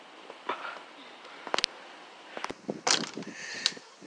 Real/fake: real